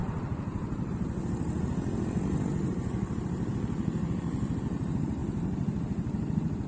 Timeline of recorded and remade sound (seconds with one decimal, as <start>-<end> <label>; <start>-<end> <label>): 0.0-5.2 remade; 5.2-6.7 recorded